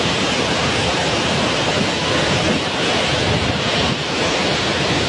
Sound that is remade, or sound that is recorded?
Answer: recorded